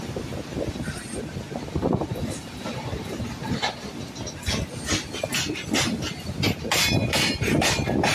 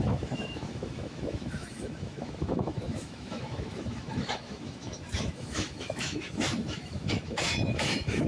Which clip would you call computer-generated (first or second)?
second